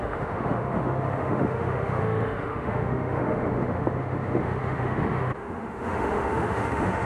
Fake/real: fake